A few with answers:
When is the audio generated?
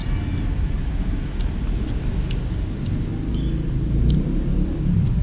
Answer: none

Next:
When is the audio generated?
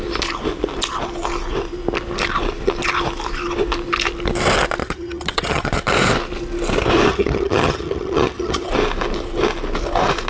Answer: 4.8-5.7 (vocoder, HiFi-GAN); 7.1-8.7